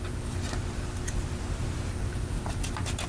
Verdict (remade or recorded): recorded